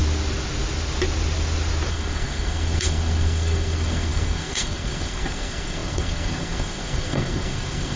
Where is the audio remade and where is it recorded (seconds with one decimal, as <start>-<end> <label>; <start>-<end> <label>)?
0.0-1.9 recorded; 1.9-8.0 remade

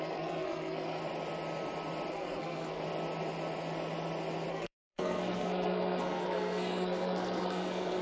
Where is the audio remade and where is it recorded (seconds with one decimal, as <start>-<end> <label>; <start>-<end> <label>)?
0.0-1.0 remade; 1.0-2.1 recorded; 2.1-2.8 remade; 2.8-4.5 recorded; 4.5-8.0 remade

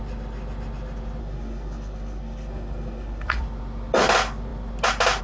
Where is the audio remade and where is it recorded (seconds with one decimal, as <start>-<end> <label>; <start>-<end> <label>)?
0.0-1.2 recorded; 1.2-3.4 remade; 3.4-5.2 recorded

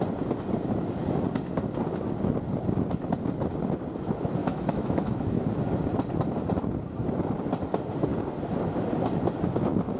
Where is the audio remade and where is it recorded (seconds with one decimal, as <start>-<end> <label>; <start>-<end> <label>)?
0.0-4.4 recorded; 4.4-5.4 remade; 5.4-10.0 recorded

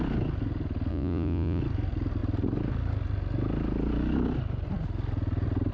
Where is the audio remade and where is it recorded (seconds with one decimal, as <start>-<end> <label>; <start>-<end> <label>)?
0.0-0.9 recorded; 0.9-1.6 remade; 1.6-5.7 recorded